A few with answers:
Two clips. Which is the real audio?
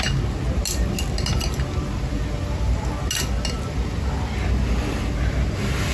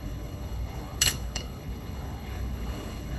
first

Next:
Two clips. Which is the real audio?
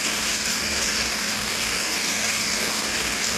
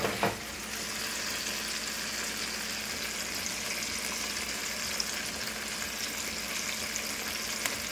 second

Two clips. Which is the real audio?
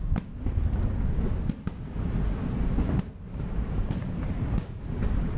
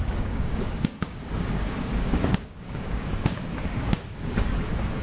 first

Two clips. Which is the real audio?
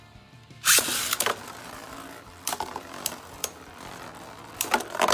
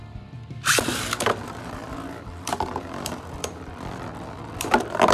first